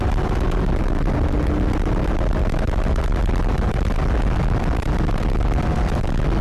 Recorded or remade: recorded